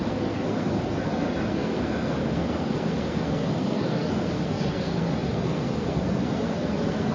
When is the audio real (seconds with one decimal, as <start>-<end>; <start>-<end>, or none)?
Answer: none